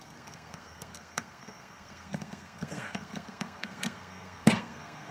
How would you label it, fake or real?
fake